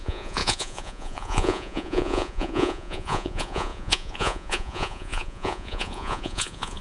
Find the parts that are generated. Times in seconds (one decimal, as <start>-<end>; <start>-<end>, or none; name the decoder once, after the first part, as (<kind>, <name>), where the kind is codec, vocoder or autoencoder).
0.0-6.8 (vocoder, Vocos)

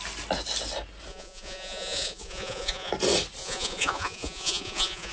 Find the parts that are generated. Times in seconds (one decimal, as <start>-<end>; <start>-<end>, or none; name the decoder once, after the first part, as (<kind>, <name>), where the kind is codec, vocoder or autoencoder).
1.1-2.9 (vocoder, Vocos); 3.4-5.1

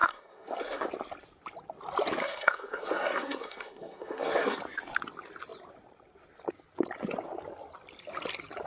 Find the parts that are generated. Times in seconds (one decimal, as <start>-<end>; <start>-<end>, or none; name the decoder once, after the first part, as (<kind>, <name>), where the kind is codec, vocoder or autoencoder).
0.0-0.9 (codec, SNAC); 2.2-4.6

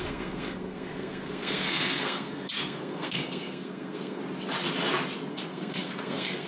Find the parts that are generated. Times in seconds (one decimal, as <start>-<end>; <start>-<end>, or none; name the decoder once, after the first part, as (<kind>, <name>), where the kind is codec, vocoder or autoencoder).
0.0-4.2 (codec, SNAC); 5.3-6.5